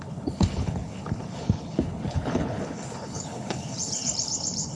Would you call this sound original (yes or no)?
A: no